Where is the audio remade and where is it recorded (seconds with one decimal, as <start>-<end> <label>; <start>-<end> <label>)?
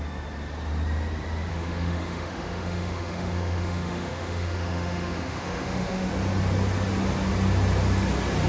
0.0-1.5 recorded; 1.5-6.1 remade; 6.1-8.5 recorded